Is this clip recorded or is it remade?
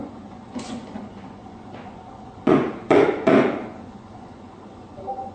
remade